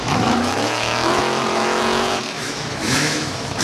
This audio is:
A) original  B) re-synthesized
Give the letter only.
B